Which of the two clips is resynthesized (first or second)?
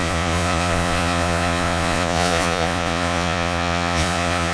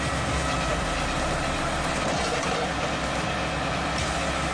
first